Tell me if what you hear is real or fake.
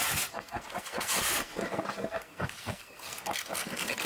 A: fake